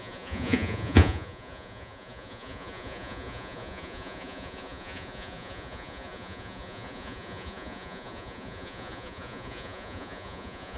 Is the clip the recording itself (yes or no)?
no